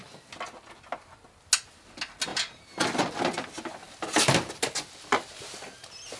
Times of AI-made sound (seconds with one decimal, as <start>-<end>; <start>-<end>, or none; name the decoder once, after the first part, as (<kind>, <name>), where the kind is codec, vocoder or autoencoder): none